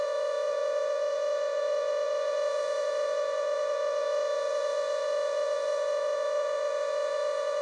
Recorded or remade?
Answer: remade